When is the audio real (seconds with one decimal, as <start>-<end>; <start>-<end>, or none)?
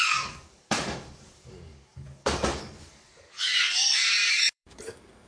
3.5-4.3